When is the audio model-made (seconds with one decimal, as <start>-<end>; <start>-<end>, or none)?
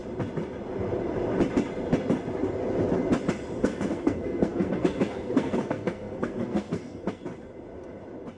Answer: 3.6-7.2